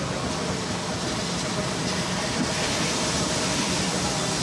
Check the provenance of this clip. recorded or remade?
recorded